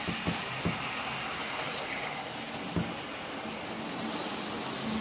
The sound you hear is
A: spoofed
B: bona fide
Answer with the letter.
B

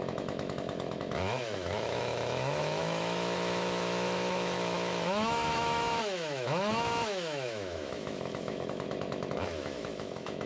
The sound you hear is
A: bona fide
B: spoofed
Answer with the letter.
B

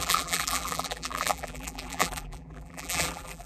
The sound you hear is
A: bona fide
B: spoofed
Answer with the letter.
B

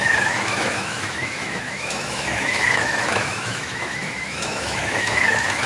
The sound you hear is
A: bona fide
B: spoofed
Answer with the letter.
B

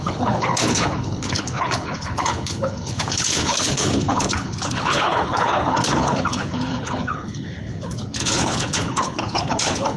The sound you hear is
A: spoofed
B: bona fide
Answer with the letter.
A